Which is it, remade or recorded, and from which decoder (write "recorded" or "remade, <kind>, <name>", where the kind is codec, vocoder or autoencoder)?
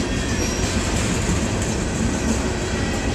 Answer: recorded